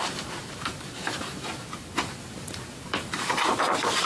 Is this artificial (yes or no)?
yes